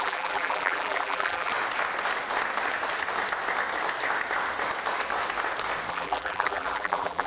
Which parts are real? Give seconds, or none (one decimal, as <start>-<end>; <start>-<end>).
1.5-5.9